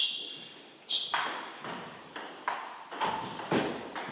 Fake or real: real